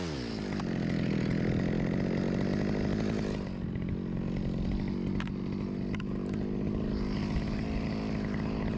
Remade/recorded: recorded